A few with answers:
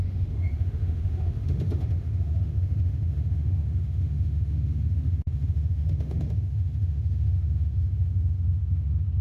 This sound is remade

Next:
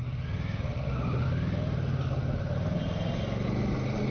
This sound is recorded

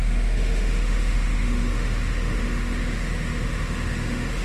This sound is remade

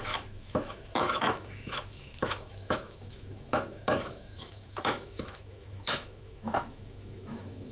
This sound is remade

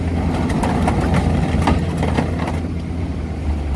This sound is recorded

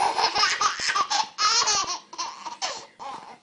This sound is recorded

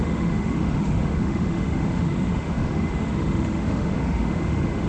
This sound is remade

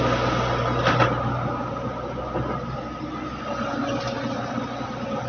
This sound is recorded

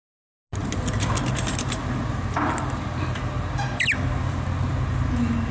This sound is recorded